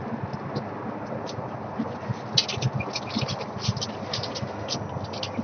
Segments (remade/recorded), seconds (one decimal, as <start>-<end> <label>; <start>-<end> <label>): 0.0-5.4 recorded